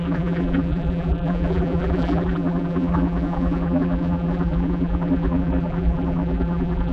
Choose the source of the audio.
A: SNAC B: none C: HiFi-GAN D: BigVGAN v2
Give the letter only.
D